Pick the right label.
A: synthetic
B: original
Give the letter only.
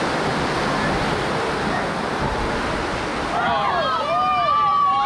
B